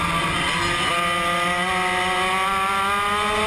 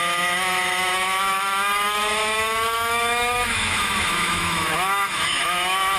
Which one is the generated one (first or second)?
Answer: second